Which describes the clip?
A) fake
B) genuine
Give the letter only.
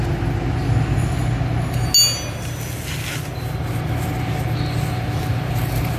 B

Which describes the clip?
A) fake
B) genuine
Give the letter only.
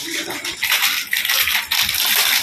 B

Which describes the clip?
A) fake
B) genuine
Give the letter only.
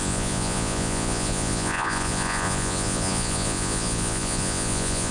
A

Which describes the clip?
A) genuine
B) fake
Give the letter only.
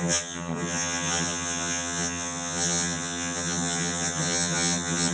B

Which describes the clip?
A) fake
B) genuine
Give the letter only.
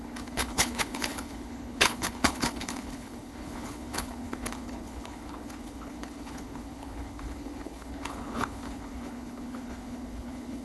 A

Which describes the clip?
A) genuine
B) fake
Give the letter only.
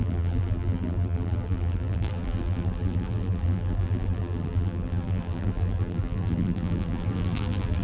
B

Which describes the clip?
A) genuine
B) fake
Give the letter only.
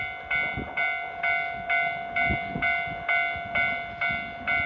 A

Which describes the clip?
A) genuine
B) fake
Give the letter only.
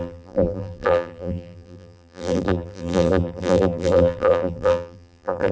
B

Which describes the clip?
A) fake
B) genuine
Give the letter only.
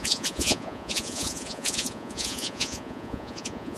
A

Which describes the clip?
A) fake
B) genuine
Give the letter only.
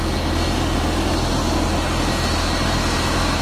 B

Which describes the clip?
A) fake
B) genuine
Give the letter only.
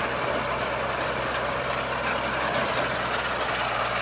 B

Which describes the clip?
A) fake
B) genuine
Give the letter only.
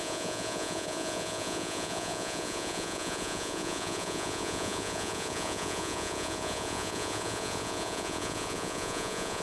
A